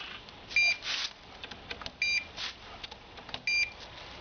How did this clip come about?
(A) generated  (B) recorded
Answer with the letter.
B